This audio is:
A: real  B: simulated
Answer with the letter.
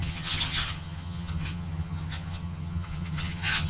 B